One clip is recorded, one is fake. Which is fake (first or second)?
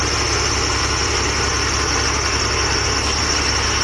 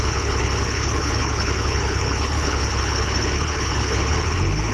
second